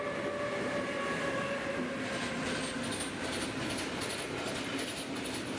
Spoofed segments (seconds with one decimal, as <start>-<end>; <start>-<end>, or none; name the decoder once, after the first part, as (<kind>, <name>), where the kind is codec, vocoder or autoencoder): none

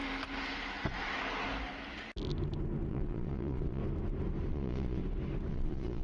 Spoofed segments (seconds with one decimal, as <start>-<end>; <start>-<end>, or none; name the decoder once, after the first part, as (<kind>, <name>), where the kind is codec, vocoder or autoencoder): 2.9-3.8 (vocoder, Vocos); 4.5-5.0; 5.5-6.0

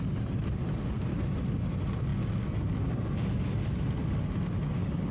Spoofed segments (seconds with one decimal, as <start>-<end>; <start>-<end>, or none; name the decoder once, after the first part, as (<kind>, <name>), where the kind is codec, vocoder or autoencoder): none

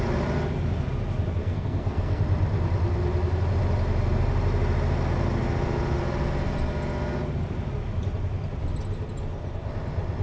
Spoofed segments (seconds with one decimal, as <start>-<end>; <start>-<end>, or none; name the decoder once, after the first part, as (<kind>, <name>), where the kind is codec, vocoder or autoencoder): 1.4-2.2 (codec, SNAC)

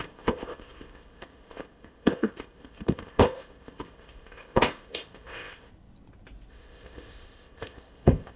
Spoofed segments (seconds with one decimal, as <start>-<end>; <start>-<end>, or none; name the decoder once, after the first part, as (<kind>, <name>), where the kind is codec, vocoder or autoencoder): 0.0-5.7 (codec, ZipCodec); 6.5-8.4

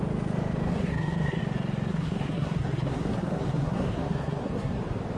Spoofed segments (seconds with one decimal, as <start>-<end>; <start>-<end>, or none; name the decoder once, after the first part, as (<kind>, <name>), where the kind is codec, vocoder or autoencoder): 0.7-1.4 (codec, SNAC); 1.9-4.8

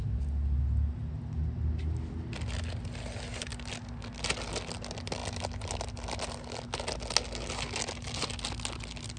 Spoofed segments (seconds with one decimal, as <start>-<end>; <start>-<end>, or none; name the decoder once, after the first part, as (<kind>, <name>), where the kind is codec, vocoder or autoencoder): none

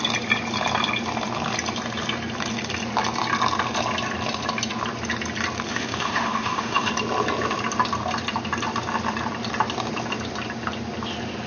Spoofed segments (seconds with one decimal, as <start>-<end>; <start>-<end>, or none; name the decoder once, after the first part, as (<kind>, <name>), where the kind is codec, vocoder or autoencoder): 5.7-6.9 (autoencoder, DAC-VAE)